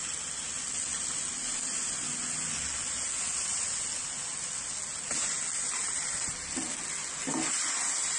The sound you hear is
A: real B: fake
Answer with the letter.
A